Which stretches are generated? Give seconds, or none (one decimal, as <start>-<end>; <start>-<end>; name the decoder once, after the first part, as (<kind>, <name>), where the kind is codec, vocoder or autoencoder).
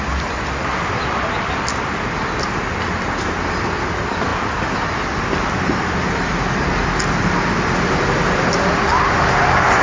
none